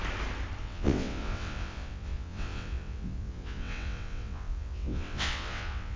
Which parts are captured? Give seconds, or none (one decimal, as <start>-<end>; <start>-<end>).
0.0-0.6